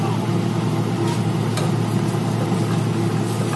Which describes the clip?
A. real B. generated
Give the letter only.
A